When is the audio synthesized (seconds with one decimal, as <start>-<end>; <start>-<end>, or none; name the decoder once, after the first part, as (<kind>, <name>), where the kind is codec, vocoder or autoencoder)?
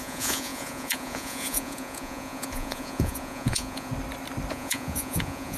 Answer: 0.0-3.9 (vocoder, Vocos); 4.5-5.6